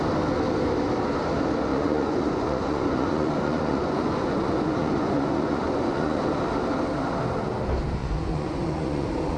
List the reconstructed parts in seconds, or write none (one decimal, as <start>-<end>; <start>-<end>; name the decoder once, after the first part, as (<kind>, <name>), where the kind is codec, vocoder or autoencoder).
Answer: 1.7-6.2 (vocoder, Vocos); 8.0-9.4